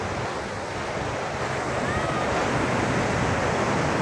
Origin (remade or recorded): recorded